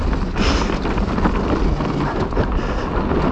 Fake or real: real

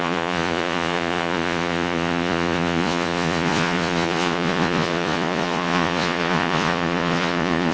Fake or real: fake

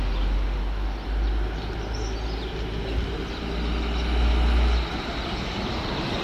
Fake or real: real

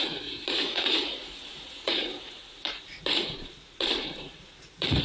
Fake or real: fake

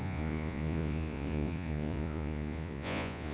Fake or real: fake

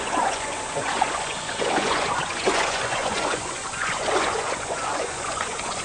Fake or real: fake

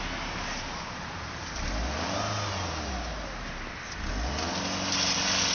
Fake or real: real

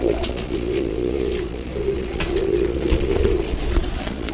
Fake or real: fake